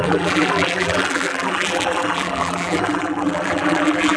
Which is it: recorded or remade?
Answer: remade